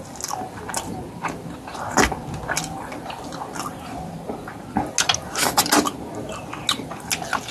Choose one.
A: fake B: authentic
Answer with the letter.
B